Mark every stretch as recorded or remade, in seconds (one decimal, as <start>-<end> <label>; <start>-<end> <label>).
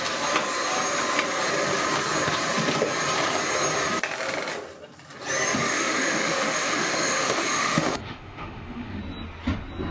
0.0-5.7 recorded; 5.7-9.0 remade; 9.0-9.9 recorded